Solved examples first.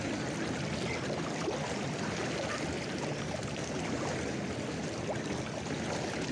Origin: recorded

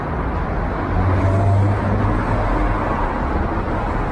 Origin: recorded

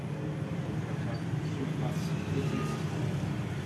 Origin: recorded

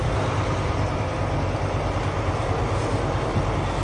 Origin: recorded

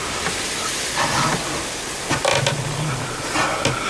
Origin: recorded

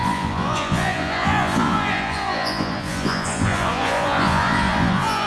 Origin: remade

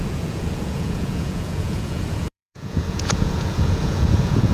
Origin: remade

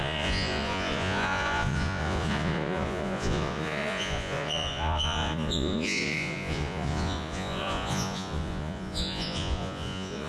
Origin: remade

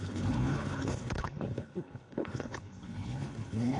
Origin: remade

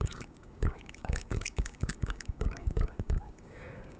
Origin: remade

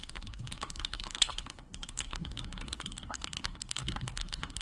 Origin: remade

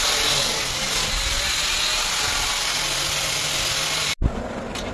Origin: recorded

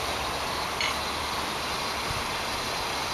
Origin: recorded